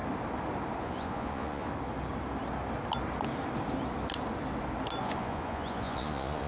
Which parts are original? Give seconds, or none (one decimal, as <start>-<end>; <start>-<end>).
0.0-0.8; 1.7-5.0